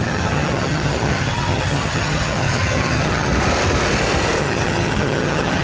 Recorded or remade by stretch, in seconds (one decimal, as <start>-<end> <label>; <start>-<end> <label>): 0.0-3.3 remade; 3.3-4.4 recorded; 4.4-5.6 remade